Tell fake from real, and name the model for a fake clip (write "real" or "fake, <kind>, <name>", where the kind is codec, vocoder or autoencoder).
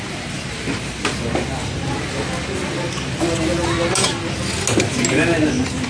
real